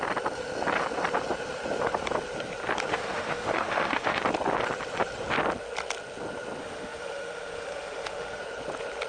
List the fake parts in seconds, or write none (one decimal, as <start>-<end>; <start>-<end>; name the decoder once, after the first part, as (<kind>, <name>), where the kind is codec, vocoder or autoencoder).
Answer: 2.9-4.2 (autoencoder, DAC-VAE); 6.6-8.4